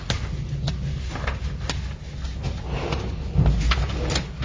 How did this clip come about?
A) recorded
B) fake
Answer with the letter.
A